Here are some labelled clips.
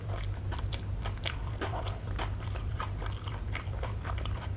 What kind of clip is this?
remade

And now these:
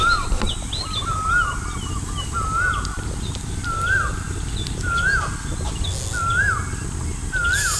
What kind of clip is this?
recorded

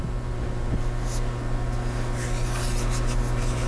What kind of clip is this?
recorded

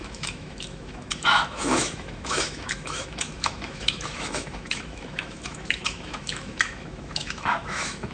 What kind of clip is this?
remade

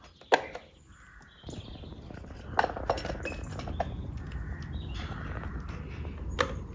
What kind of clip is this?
recorded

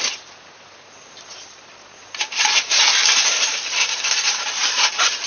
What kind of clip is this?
remade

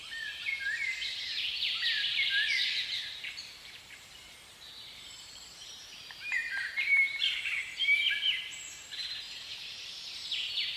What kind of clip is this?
remade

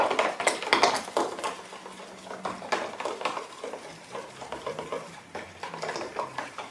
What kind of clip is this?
recorded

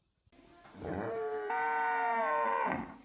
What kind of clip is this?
recorded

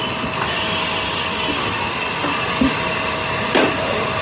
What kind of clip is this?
recorded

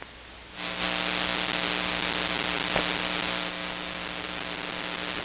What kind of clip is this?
recorded